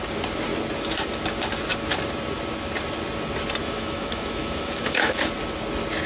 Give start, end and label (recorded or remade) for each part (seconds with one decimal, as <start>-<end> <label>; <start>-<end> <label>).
0.0-3.6 recorded; 3.6-5.3 remade; 5.3-6.1 recorded